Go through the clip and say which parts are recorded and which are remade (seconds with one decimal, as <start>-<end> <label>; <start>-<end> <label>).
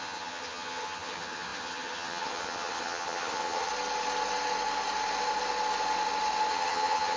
0.0-3.7 remade; 3.7-6.5 recorded; 6.5-7.2 remade